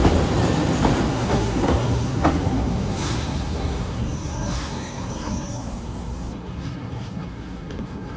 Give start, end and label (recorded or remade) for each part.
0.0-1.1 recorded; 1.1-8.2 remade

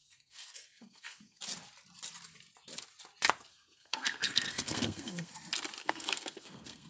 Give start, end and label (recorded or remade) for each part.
0.0-1.4 remade; 1.4-3.5 recorded; 3.5-5.3 remade; 5.3-5.8 recorded; 5.8-6.9 remade

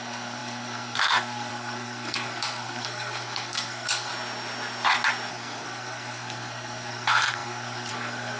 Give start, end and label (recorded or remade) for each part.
0.0-4.1 remade; 4.1-5.3 recorded; 5.3-8.4 remade

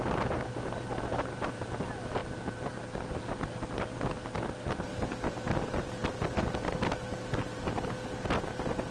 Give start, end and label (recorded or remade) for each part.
0.0-8.9 recorded

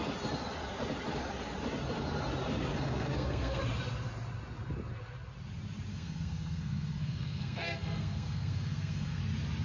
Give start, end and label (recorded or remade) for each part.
0.0-2.7 recorded; 2.7-3.6 remade; 3.6-5.9 recorded; 5.9-9.2 remade; 9.2-9.6 recorded

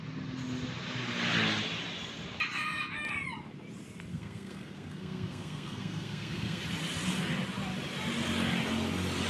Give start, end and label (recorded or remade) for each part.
0.0-4.1 recorded; 4.1-6.6 remade; 6.6-9.3 recorded

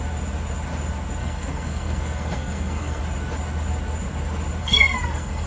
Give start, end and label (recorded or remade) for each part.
0.0-1.2 recorded; 1.2-3.0 remade; 3.0-4.6 recorded; 4.6-5.5 remade

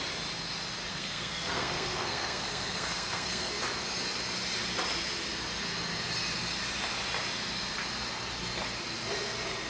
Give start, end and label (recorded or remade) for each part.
0.0-0.9 recorded; 0.9-3.5 remade; 3.5-9.7 recorded